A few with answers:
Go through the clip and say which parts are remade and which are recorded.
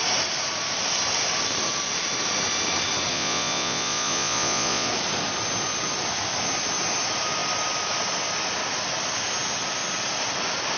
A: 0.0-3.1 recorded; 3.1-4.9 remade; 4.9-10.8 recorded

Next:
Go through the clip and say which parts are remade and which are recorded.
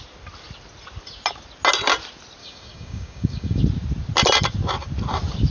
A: 0.0-2.4 recorded; 2.4-3.6 remade; 3.6-5.5 recorded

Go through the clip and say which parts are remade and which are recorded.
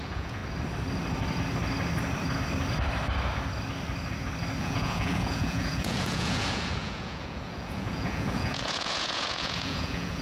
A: 0.0-0.4 remade; 0.4-4.6 recorded; 4.6-10.2 remade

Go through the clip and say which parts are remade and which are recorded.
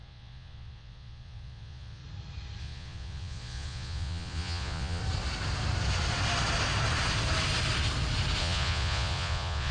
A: 0.0-2.0 remade; 2.0-2.6 recorded; 2.6-5.0 remade; 5.0-8.4 recorded; 8.4-9.7 remade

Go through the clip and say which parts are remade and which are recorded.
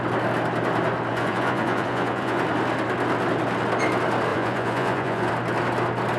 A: 0.0-1.1 recorded; 1.1-2.4 remade; 2.4-4.3 recorded; 4.3-5.3 remade; 5.3-6.2 recorded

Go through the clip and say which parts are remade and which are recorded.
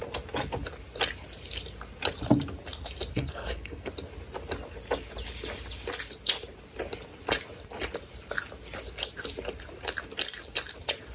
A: 0.0-3.1 recorded; 3.1-3.9 remade; 3.9-11.1 recorded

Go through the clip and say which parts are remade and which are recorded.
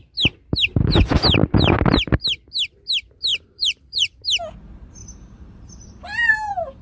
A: 0.0-3.3 recorded; 3.3-4.2 remade; 4.2-5.0 recorded; 5.0-6.8 remade